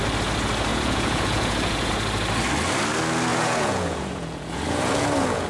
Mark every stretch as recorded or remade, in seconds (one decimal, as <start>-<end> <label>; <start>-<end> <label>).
0.0-0.7 recorded; 0.7-1.9 remade; 1.9-3.3 recorded; 3.3-5.5 remade

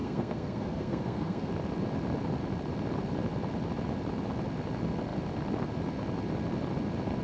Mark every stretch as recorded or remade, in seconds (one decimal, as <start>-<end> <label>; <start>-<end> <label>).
0.0-1.5 remade; 1.5-7.2 recorded

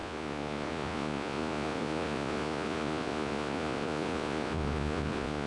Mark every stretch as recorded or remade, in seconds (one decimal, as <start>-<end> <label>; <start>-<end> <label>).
0.0-5.5 remade

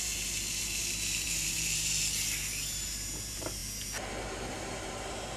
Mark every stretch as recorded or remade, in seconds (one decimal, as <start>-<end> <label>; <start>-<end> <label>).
0.0-3.6 remade; 3.6-4.5 recorded; 4.5-5.4 remade

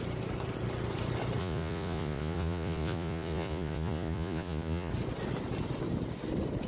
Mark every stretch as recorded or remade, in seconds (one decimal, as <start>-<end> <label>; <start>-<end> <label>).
0.0-1.4 recorded; 1.4-4.9 remade; 4.9-6.7 recorded